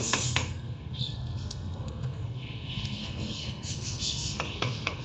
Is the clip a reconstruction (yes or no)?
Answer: yes